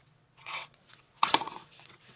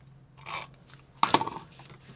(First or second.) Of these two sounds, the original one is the second